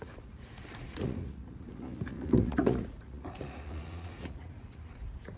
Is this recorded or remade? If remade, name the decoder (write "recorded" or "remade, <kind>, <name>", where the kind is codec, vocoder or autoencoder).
remade, vocoder, Vocos